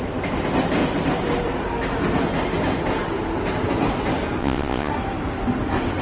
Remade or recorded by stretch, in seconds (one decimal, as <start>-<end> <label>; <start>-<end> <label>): 0.0-4.4 recorded; 4.4-4.9 remade; 4.9-6.0 recorded